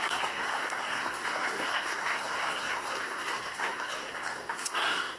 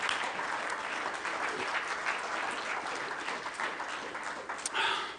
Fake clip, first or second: first